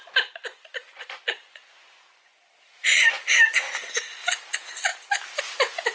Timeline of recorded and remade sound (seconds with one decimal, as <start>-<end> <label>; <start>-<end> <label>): 0.0-0.5 recorded; 0.5-2.4 remade; 2.4-5.9 recorded